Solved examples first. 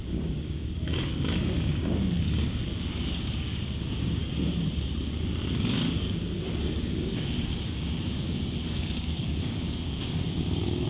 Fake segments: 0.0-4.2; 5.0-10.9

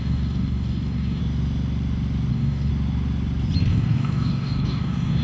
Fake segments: 0.0-1.2; 2.3-2.7; 3.7-5.2

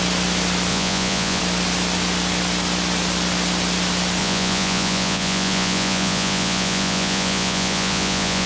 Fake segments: 0.7-1.4; 4.2-8.5

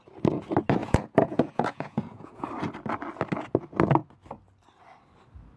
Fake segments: 0.8-2.5

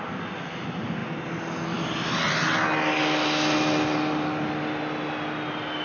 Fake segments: none